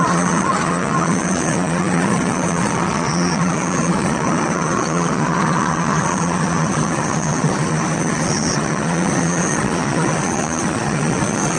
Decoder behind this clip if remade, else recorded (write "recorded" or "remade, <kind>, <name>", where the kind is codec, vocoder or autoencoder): remade, vocoder, Vocos